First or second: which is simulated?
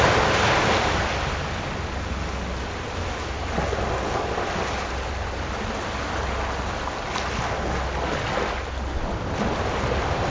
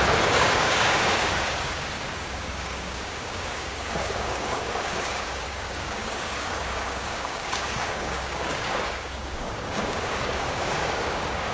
second